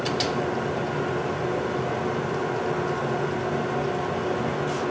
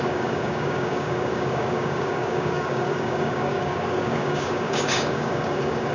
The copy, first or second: second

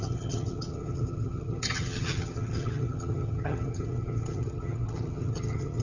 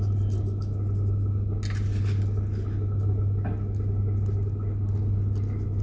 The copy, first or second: first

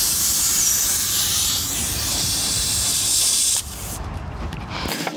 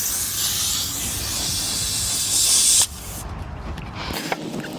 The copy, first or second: first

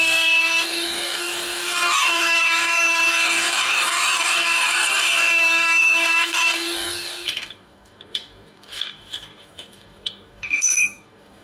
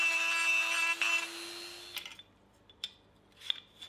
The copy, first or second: first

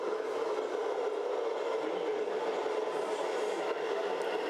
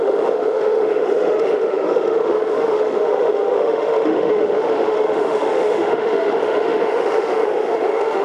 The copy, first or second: second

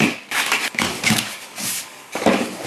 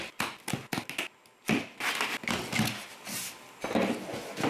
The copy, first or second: first